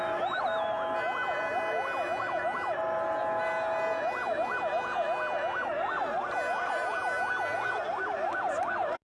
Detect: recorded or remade recorded